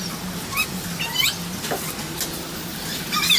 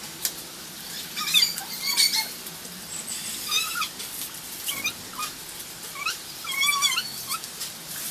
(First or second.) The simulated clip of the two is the second